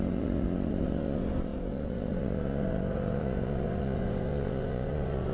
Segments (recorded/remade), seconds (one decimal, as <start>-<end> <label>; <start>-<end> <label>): 0.0-5.3 remade